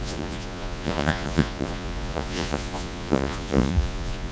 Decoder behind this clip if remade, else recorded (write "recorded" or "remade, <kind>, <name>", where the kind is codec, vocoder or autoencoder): remade, vocoder, Vocos